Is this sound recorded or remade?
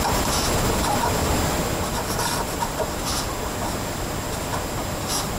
recorded